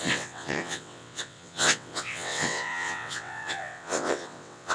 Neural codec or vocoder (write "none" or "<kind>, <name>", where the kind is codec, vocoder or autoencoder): vocoder, WaveNeXt